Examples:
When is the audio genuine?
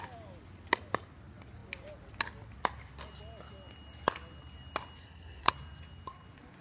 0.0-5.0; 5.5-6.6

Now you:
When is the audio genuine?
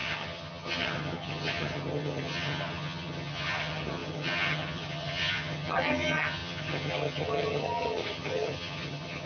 none